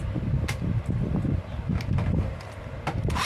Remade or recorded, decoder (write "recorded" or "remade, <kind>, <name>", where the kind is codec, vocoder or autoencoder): recorded